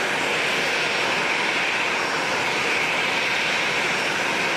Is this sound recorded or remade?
recorded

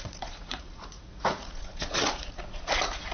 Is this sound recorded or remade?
remade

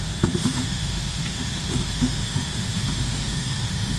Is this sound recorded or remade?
remade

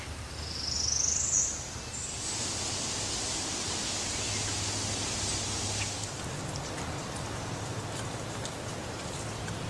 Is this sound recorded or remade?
recorded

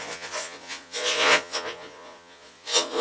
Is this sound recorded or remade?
remade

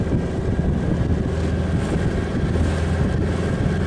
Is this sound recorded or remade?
recorded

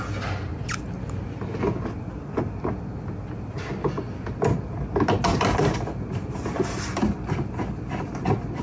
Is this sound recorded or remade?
recorded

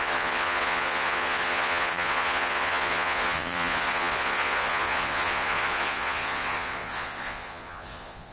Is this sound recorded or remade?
remade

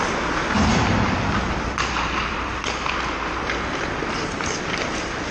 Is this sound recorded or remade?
remade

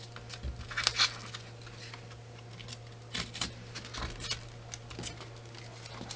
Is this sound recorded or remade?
recorded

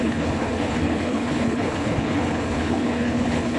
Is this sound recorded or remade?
remade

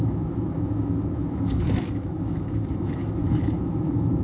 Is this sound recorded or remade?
remade